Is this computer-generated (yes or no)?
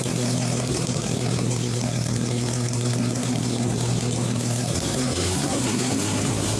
yes